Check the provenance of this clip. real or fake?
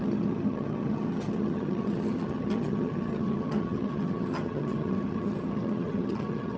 fake